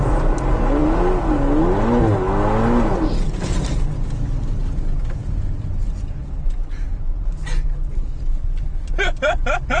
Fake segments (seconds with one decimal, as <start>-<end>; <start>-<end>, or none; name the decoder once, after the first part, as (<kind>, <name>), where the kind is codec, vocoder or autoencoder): 6.2-9.8 (vocoder, BigVGAN v2)